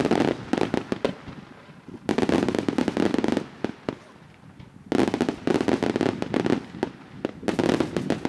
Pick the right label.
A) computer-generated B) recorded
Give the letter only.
B